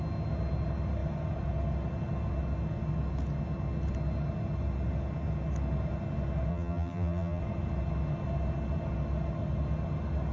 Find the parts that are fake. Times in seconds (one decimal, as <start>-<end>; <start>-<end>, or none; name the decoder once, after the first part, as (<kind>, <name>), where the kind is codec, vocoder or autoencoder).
6.5-7.4 (vocoder, BigVGAN v2)